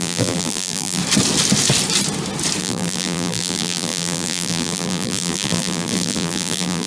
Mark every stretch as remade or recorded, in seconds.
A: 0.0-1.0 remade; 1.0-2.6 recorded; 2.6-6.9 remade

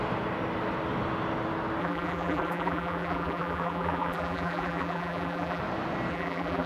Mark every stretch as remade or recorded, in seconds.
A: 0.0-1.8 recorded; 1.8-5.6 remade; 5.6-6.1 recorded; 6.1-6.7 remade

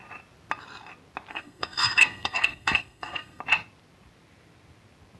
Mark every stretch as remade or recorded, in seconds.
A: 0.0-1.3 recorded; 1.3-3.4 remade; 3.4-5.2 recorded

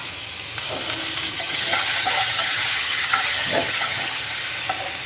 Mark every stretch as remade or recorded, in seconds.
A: 0.0-1.3 recorded; 1.3-4.4 remade; 4.4-5.1 recorded